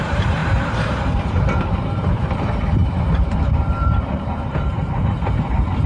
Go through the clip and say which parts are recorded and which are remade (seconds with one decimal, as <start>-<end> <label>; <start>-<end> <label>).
0.0-5.9 remade